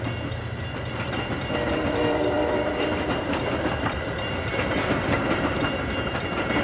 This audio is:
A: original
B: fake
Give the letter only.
B